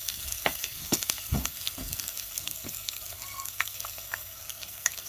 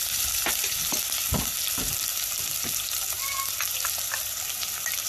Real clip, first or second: second